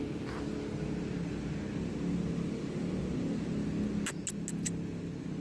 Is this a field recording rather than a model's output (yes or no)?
yes